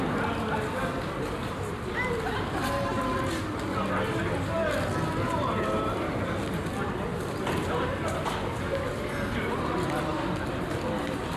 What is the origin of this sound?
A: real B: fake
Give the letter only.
A